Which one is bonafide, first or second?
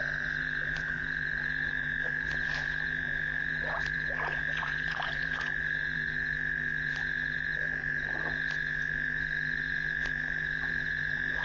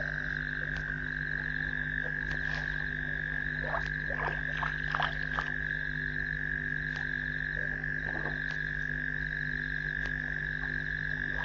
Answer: second